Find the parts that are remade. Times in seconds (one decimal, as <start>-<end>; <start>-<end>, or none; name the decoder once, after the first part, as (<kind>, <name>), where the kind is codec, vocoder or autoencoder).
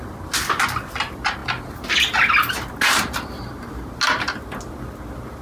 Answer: none